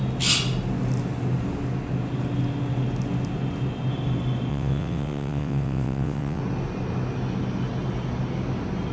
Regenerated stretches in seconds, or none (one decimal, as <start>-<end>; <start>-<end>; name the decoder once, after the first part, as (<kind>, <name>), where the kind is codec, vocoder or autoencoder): 4.5-6.4 (vocoder, WaveNeXt)